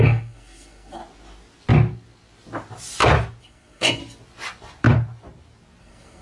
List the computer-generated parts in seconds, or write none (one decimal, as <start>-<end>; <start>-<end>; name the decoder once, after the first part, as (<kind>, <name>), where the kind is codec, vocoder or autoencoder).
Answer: 0.0-1.0 (codec, SNAC); 3.4-4.0; 5.8-6.2